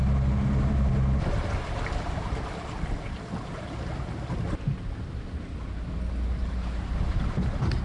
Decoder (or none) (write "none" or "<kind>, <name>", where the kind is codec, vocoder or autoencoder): none